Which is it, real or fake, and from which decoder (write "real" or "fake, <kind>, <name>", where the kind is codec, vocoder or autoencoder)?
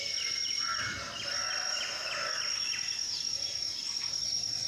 real